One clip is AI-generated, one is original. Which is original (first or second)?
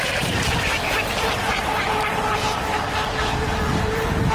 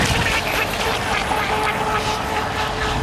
second